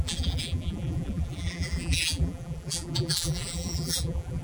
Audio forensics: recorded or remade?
remade